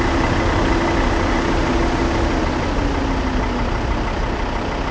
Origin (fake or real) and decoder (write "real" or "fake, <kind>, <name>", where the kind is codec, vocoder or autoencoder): real